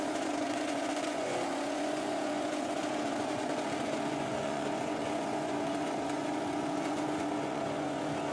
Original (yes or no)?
no